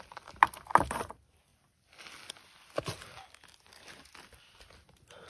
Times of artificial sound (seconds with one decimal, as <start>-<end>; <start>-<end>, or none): none